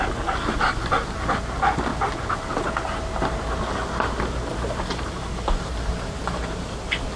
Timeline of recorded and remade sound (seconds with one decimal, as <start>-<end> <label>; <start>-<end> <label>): 0.0-7.2 recorded